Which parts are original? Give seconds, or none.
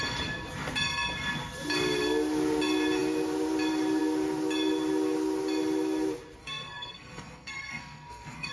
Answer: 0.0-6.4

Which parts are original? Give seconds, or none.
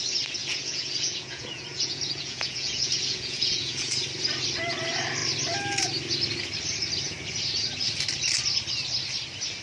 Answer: 0.0-0.4; 3.9-9.6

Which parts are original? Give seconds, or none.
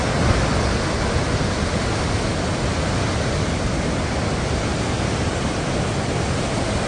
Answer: 0.0-6.9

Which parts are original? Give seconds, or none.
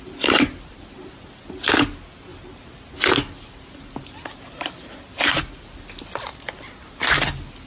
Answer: 0.0-7.7